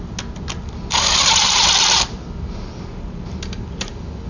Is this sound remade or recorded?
recorded